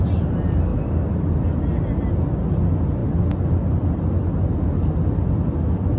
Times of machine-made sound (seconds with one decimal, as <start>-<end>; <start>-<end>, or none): none